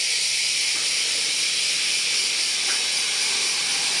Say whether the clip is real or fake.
real